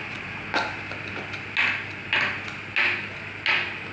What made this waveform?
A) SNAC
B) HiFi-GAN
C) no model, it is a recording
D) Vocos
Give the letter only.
C